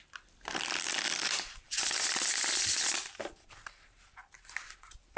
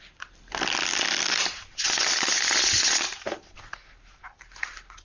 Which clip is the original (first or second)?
second